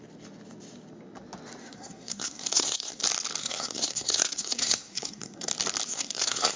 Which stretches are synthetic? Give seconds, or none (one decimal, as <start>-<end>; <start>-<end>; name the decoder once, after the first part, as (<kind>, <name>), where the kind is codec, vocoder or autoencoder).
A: 1.6-3.0 (codec, SNAC); 3.4-5.5; 5.9-6.6